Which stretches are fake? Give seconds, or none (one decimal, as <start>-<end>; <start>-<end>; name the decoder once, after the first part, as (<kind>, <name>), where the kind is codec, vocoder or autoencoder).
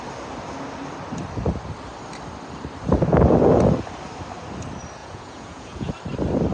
5.0-5.9 (vocoder, Vocos)